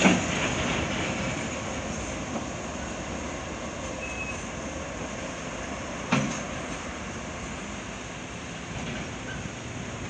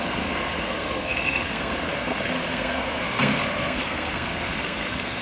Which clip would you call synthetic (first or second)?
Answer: second